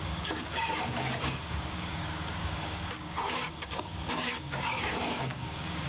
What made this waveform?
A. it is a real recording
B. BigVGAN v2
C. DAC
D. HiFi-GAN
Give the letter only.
C